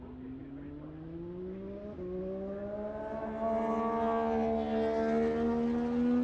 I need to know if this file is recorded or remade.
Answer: recorded